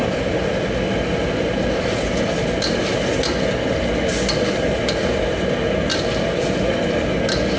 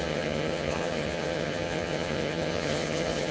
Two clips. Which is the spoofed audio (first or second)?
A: second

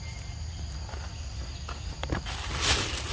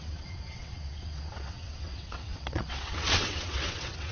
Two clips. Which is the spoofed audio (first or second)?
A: second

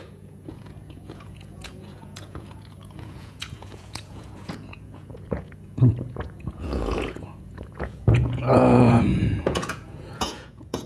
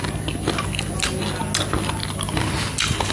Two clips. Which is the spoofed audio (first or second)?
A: first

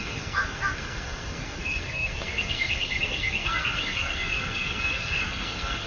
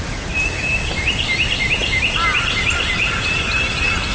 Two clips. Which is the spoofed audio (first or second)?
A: first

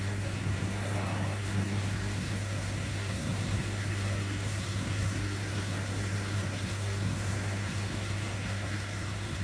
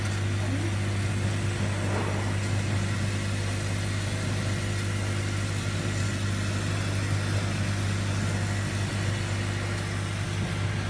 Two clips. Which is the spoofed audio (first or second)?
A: first